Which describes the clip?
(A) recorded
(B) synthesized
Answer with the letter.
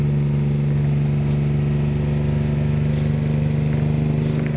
A